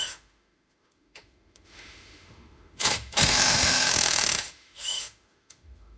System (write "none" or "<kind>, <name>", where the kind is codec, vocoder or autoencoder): autoencoder, DAC-VAE